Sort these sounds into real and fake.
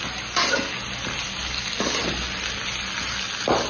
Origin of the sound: real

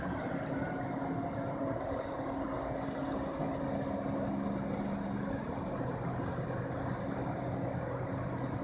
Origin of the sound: real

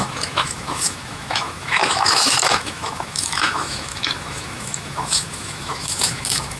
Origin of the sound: fake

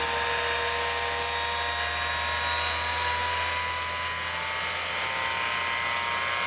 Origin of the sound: real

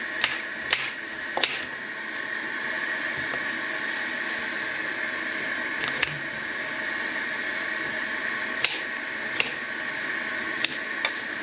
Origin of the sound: real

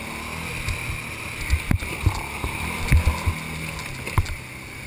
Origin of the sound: real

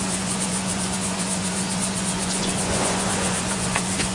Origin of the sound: fake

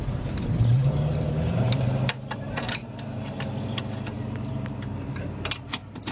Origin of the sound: fake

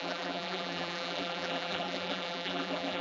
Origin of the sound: fake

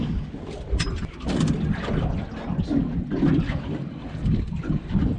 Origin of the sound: real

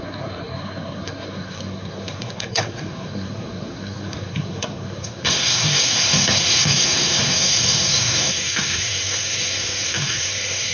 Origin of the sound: fake